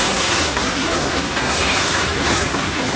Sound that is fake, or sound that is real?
fake